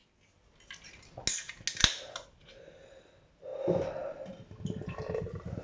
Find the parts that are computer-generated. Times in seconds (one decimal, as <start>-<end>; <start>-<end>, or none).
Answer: none